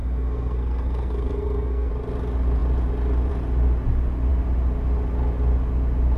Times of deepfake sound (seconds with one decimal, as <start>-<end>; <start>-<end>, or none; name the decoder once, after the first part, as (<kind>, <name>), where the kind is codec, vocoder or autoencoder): 0.0-1.9 (codec, SNAC)